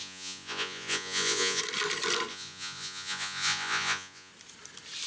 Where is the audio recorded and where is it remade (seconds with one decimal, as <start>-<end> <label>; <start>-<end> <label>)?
0.0-1.6 remade; 1.6-2.3 recorded; 2.3-4.3 remade; 4.3-5.1 recorded